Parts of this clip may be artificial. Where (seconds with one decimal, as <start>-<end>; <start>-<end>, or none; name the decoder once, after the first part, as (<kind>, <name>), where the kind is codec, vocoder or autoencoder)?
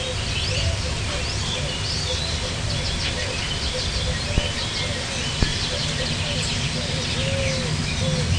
5.5-6.9 (vocoder, BigVGAN v2)